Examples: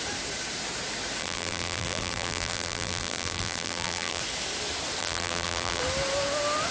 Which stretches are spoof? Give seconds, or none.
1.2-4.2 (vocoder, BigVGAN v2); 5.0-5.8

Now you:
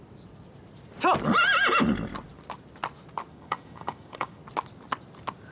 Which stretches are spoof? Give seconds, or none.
3.3-4.4 (codec, DAC)

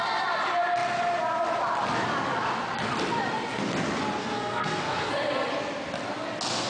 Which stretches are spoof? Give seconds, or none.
4.2-5.1 (codec, SNAC)

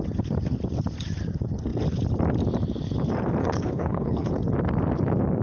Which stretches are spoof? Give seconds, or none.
3.4-4.3 (codec, HILCodec)

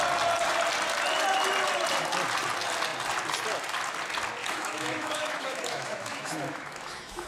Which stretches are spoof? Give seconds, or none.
4.4-7.3 (autoencoder, DAC-VAE)